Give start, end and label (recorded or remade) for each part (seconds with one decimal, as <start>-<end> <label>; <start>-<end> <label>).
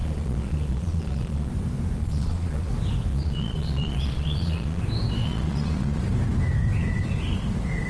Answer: 0.0-1.5 remade; 1.5-2.0 recorded; 2.0-2.7 remade; 2.7-3.1 recorded; 3.1-4.8 remade; 4.8-5.2 recorded; 5.2-6.0 remade; 6.0-7.9 recorded